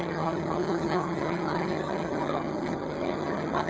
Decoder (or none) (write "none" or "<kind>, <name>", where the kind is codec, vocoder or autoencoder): vocoder, HiFi-GAN